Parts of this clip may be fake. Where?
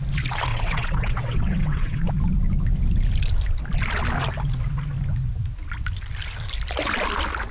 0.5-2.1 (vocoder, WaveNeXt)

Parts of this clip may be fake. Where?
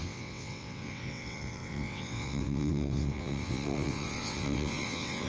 0.0-5.3 (vocoder, WaveNeXt)